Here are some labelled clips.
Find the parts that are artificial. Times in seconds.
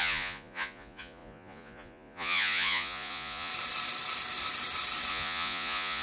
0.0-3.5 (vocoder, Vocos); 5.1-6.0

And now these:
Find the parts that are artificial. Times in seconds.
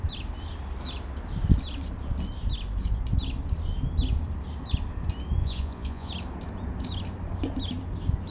5.4-6.1 (vocoder, Vocos)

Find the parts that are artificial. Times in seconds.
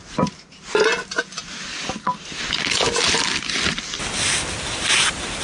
none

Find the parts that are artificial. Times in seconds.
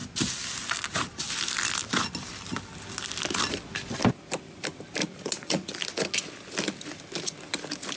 5.0-5.7 (vocoder, Vocos)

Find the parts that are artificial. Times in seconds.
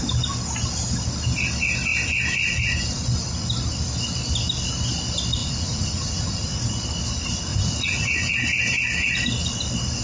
5.4-6.8 (vocoder, Vocos); 7.5-8.3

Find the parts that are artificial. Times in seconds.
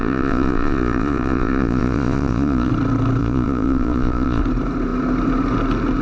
0.0-2.7 (vocoder, Vocos); 3.2-4.4